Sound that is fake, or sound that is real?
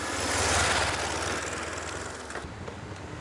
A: real